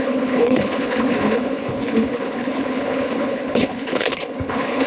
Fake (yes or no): yes